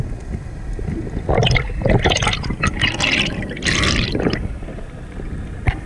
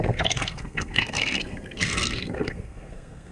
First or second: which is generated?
second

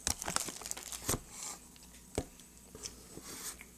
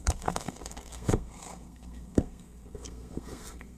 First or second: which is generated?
second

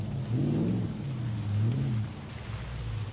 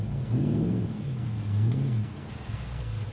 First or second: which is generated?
second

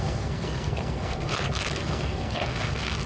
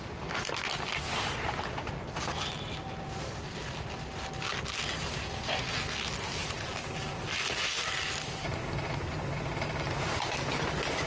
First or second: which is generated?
first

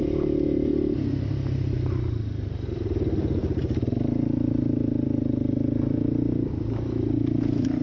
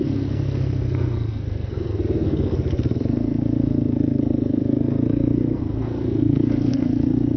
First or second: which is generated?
second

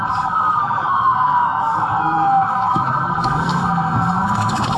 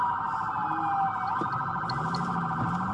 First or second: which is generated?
first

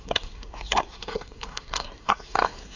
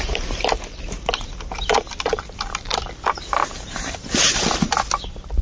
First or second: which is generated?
first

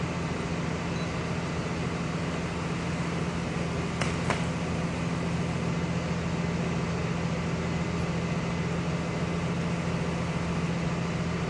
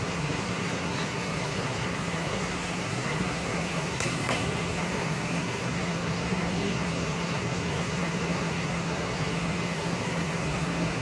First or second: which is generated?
second